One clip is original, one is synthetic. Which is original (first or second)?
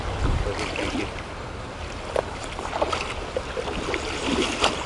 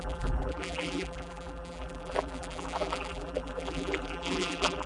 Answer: first